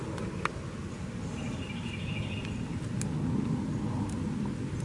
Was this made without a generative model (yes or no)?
yes